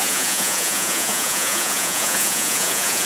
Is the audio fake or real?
fake